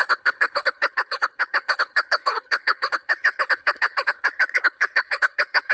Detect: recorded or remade remade